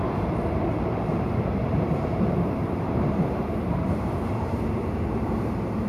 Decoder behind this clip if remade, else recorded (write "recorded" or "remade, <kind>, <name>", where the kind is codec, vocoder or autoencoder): remade, vocoder, BigVGAN v2